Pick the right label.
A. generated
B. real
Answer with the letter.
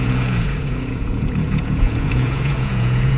A